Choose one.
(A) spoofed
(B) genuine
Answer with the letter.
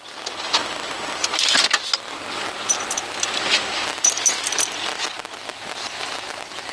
B